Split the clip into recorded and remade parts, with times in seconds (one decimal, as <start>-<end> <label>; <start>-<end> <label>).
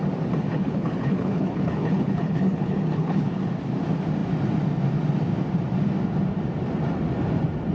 0.0-0.5 recorded; 0.5-3.4 remade; 3.4-7.7 recorded